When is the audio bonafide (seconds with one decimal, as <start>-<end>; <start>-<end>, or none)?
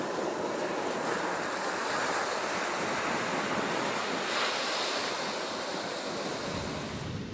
0.0-7.3